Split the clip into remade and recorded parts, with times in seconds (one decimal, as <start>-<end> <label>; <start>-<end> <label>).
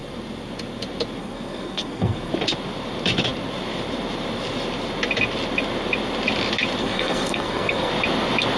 0.0-1.2 recorded; 1.2-2.3 remade; 2.3-6.8 recorded; 6.8-7.9 remade; 7.9-8.6 recorded